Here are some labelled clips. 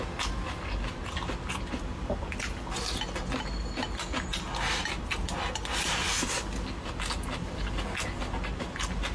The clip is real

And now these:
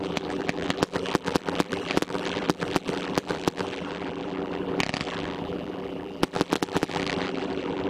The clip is fake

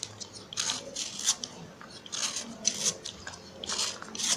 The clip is real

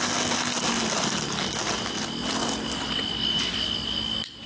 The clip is real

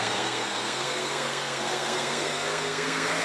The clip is fake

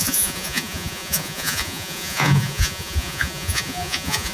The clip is fake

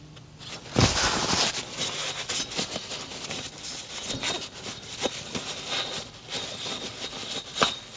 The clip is real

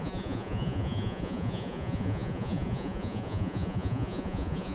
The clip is fake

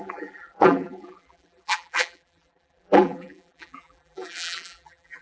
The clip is fake